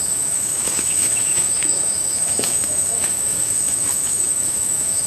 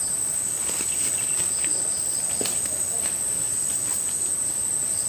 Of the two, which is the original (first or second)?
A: second